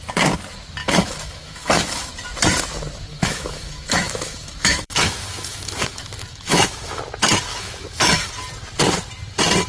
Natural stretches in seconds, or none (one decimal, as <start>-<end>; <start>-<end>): 0.0-0.8; 2.1-3.1; 7.0-7.5; 8.3-9.7